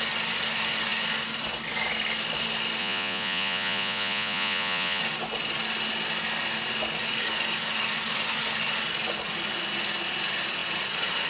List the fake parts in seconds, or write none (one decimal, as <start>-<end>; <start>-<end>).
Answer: 2.8-5.0